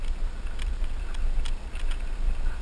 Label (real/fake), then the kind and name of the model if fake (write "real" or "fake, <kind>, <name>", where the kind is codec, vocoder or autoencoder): real